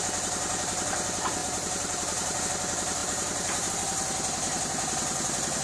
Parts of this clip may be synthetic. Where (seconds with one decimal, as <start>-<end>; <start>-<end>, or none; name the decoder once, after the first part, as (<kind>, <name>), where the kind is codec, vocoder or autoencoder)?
1.4-2.4 (vocoder, BigVGAN v2); 3.0-3.7